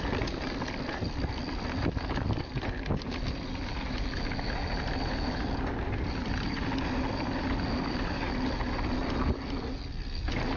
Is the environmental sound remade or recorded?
recorded